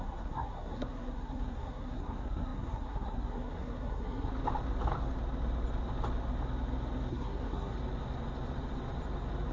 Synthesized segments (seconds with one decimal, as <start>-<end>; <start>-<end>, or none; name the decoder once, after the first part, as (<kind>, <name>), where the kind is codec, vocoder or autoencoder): 0.0-4.3 (codec, SNAC); 7.1-7.7